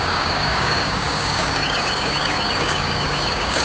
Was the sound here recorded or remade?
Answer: remade